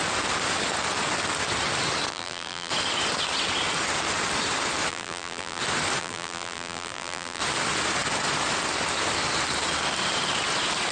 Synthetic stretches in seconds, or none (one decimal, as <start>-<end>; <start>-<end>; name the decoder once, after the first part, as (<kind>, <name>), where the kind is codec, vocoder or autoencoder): 2.1-2.7 (vocoder, BigVGAN v2); 4.9-5.6; 6.0-7.4